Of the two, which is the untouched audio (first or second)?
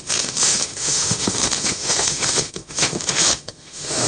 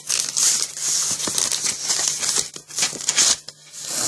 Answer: second